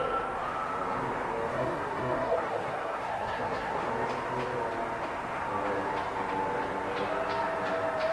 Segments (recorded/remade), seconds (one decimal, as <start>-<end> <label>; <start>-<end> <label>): 0.0-1.5 recorded; 1.5-3.9 remade; 3.9-8.1 recorded